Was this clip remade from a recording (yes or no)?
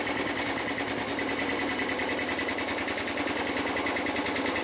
no